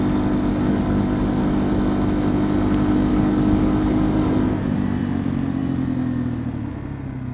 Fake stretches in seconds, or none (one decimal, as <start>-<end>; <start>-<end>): 0.5-1.4; 3.1-4.3